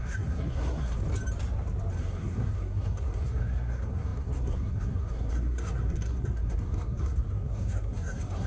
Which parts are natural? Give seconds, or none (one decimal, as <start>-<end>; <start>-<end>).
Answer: 1.0-2.0